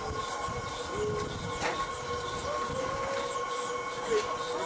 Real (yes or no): yes